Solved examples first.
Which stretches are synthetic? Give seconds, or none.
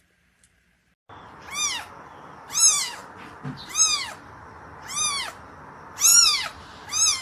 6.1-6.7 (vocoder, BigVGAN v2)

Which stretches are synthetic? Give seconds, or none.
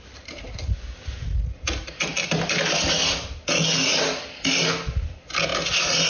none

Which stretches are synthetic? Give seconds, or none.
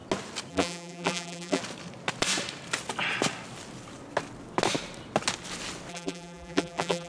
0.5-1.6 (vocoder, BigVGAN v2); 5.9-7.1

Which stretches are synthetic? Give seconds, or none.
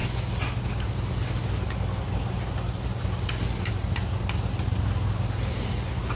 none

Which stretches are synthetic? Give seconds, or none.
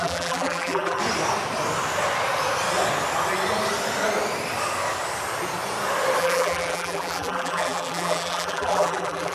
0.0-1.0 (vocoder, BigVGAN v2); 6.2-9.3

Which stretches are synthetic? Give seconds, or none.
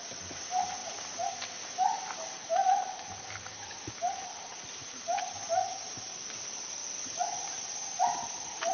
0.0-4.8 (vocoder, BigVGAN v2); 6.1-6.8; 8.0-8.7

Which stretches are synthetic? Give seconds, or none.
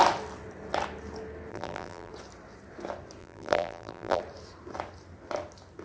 1.5-2.1 (vocoder, BigVGAN v2); 3.2-4.2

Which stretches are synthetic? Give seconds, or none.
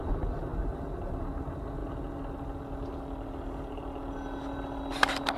none